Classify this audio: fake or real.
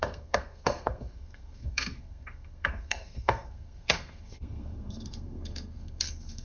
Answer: fake